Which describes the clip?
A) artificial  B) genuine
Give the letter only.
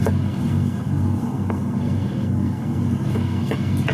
A